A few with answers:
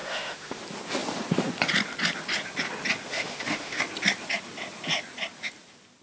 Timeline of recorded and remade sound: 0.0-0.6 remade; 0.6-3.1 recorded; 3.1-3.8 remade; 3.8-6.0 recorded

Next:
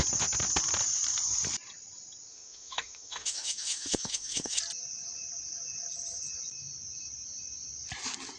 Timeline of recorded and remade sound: 0.0-2.3 recorded; 2.3-4.6 remade; 4.6-8.4 recorded

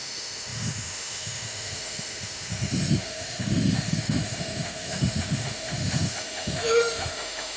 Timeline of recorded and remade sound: 0.0-7.6 remade